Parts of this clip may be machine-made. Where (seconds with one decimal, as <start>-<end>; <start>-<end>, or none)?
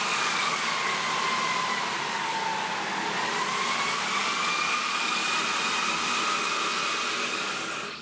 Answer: 0.0-0.9; 2.1-2.5; 3.9-5.2; 7.3-8.0